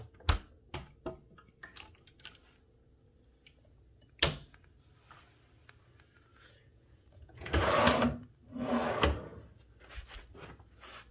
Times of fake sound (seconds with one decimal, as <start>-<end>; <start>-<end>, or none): 6.3-7.5